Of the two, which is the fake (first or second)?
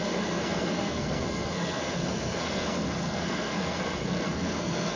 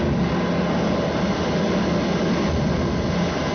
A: first